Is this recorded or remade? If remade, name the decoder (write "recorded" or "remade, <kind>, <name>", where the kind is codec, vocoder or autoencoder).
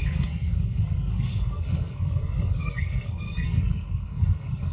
remade, codec, SNAC